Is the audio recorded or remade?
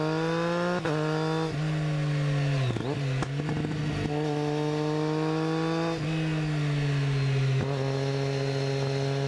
recorded